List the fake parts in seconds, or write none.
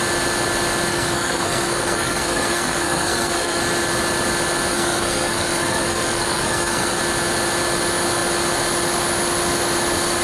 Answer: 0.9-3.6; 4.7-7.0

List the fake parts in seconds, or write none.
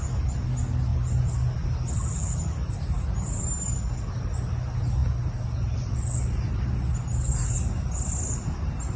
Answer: none